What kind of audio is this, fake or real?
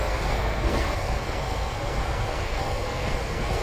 fake